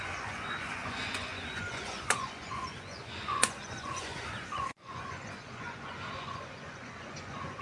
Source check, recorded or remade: remade